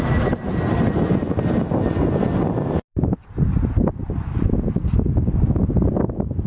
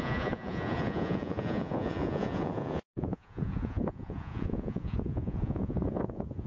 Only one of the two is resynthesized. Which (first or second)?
second